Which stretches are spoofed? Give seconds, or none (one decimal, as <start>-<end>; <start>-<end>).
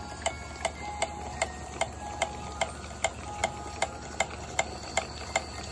none